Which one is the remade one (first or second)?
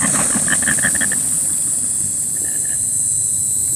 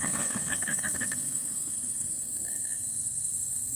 second